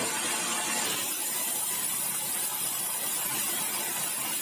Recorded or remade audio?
recorded